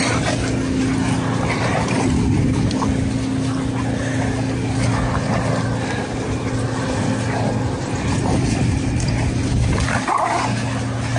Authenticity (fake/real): real